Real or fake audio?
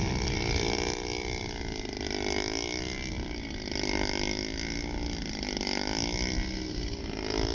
real